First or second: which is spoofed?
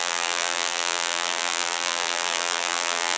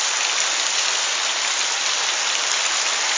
first